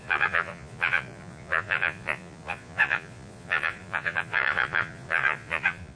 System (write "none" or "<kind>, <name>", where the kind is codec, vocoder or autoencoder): vocoder, Vocos